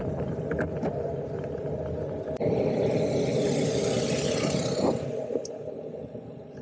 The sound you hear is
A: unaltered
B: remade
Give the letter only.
A